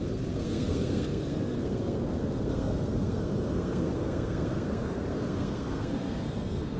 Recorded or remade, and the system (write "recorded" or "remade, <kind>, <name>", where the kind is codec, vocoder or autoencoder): remade, codec, SNAC